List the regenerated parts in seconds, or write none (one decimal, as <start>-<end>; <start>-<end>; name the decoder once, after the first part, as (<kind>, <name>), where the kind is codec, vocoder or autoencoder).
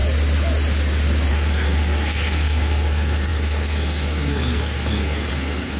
1.3-5.8 (codec, SNAC)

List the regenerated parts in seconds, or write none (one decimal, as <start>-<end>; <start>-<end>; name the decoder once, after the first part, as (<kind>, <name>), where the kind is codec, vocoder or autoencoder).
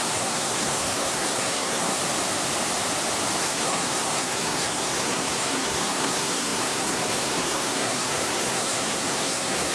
0.0-2.0 (codec, SNAC); 3.4-9.7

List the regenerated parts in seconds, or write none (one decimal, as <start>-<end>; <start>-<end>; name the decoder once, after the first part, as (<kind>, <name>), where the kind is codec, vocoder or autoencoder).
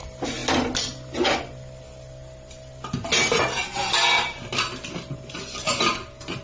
none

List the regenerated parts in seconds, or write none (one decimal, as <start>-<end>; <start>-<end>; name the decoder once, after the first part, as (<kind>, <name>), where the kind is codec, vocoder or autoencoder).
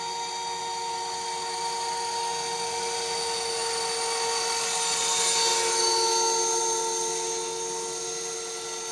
none